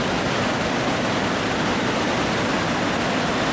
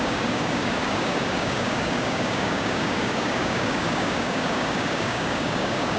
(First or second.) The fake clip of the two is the second